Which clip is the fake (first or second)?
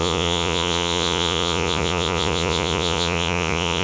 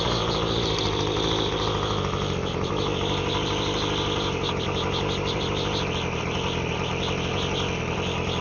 first